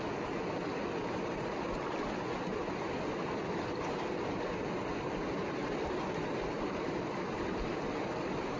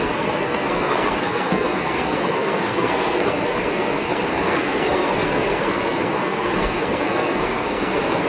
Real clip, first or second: first